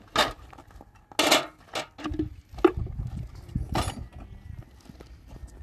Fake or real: real